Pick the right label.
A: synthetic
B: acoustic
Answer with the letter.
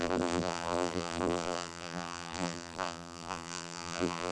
A